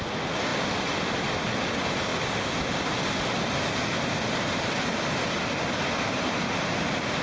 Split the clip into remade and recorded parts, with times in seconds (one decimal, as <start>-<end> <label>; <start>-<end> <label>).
0.0-7.2 recorded